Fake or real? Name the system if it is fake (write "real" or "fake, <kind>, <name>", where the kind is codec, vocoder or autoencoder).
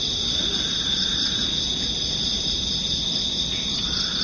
real